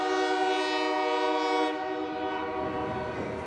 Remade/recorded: recorded